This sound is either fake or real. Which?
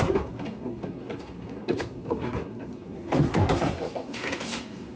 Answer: fake